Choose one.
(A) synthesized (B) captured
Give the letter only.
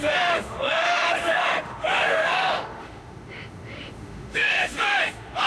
A